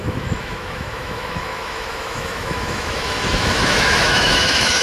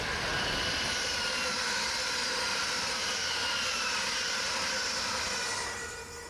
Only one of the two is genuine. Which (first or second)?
second